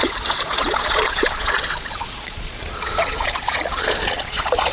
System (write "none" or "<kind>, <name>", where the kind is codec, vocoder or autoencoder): vocoder, Vocos